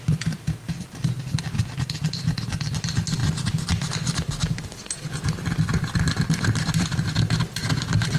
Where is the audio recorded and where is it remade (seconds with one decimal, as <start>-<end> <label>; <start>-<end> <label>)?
0.0-8.2 recorded